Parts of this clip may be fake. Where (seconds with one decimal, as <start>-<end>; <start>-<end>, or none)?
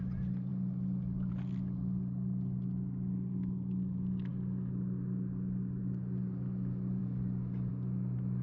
none